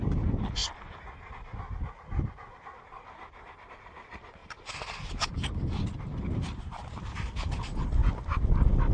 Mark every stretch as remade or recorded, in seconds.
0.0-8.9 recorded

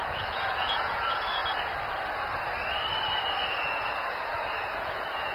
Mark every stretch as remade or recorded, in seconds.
0.0-1.4 remade; 1.4-3.5 recorded; 3.5-5.3 remade

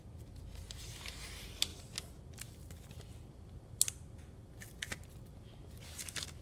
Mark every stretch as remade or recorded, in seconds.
0.0-6.4 recorded